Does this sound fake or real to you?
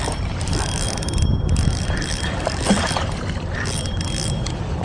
real